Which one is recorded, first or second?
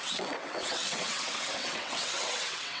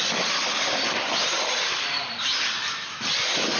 second